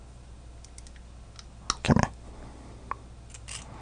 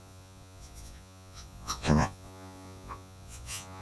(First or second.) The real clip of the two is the first